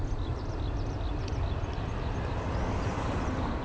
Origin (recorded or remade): recorded